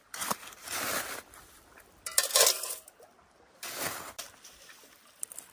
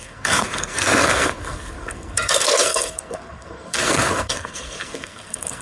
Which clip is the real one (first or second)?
first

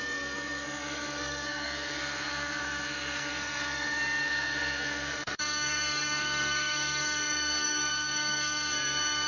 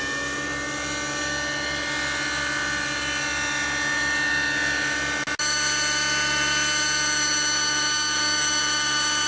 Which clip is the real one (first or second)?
second